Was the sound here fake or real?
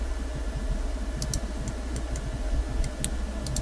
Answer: real